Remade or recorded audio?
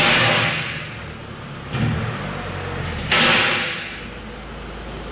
recorded